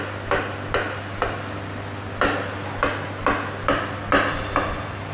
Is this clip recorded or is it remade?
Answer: recorded